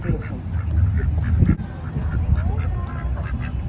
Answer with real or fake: real